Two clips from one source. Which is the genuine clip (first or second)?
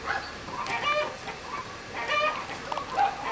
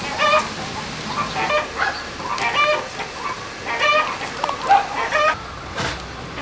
second